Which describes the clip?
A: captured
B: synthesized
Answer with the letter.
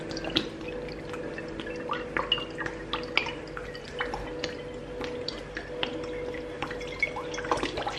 A